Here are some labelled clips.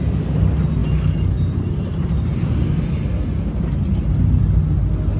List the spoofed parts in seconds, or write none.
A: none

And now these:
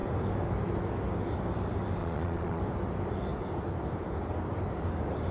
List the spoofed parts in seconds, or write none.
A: 2.0-2.6 (vocoder, Vocos)

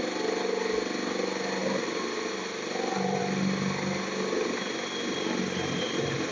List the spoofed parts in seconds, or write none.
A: 1.6-3.2 (vocoder, BigVGAN v2)

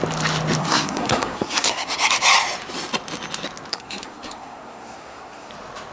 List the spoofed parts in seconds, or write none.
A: 0.6-2.1 (codec, SNAC); 3.7-5.5

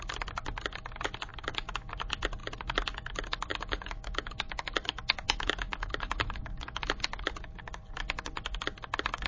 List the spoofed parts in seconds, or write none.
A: 1.3-1.9 (autoencoder, DAC-VAE); 3.5-7.3

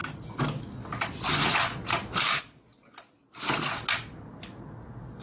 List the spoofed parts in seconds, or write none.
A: none